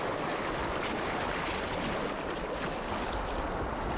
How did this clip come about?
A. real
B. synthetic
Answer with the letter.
A